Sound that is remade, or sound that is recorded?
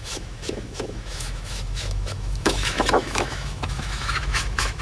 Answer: remade